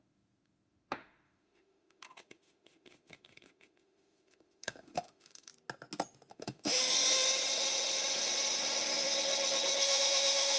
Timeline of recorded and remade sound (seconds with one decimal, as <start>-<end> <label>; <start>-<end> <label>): 0.0-5.5 remade; 5.5-6.3 recorded; 6.3-6.8 remade; 6.8-9.8 recorded; 9.8-10.6 remade